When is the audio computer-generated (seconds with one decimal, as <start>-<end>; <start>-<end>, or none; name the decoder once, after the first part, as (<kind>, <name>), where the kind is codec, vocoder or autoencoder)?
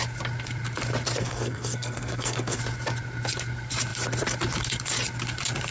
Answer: 1.2-2.6 (codec, SNAC)